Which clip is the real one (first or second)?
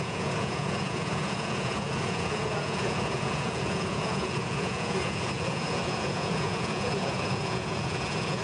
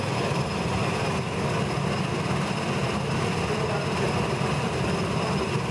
second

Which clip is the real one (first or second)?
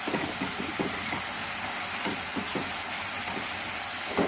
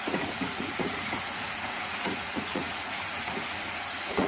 first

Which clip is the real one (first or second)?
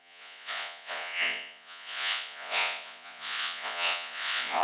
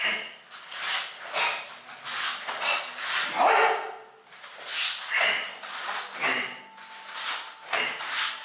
second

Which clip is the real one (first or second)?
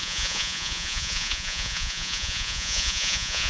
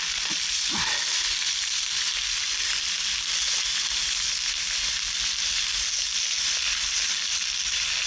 second